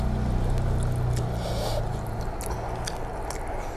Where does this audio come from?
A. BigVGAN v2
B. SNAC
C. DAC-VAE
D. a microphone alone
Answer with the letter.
D